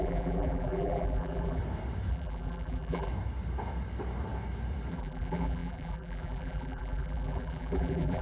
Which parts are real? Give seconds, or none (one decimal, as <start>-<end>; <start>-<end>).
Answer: 1.6-2.1; 3.1-4.9